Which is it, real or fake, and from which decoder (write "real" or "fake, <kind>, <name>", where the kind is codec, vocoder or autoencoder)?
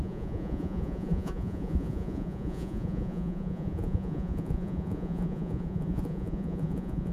fake, vocoder, Vocos